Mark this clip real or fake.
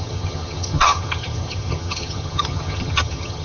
fake